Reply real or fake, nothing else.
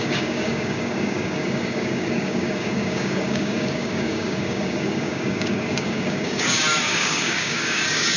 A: fake